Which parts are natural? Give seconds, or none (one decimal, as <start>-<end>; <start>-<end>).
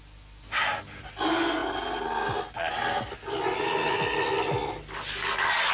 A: 0.0-5.7